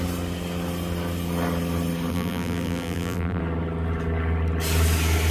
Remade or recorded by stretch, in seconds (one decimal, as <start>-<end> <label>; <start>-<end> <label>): 0.0-2.1 recorded; 2.1-3.4 remade; 3.4-5.3 recorded

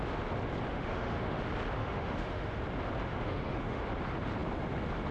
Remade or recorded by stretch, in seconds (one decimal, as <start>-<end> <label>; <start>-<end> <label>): 0.0-0.7 recorded; 0.7-1.4 remade; 1.4-1.8 recorded; 1.8-2.6 remade; 2.6-3.1 recorded; 3.1-3.8 remade; 3.8-5.1 recorded

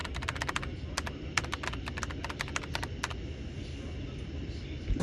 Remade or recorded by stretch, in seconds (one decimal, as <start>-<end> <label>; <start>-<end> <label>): 0.0-5.0 recorded

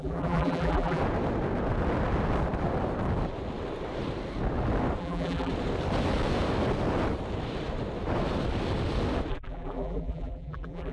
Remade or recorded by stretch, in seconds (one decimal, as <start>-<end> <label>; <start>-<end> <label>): 0.0-1.0 remade; 1.0-5.0 recorded; 5.0-5.5 remade; 5.5-9.3 recorded; 9.3-10.9 remade

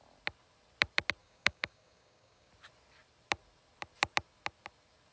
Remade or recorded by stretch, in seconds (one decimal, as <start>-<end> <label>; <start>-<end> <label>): 0.0-1.2 recorded; 1.2-2.5 remade; 2.5-5.1 recorded

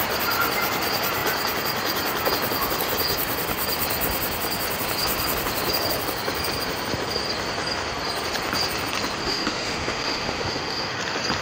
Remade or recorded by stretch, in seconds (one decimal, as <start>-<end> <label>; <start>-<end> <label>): 0.0-9.2 recorded; 9.2-11.0 remade; 11.0-11.4 recorded